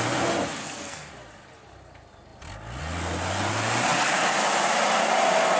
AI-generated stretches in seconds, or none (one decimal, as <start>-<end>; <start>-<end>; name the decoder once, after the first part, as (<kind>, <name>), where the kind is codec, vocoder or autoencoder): 0.6-1.1 (codec, SNAC)